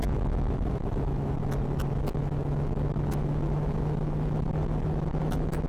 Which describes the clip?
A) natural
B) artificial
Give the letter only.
B